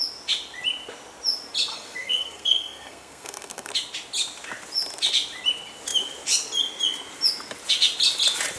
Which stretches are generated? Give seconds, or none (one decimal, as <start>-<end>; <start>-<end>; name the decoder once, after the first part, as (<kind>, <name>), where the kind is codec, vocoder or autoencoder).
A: 1.7-3.7 (codec, SNAC)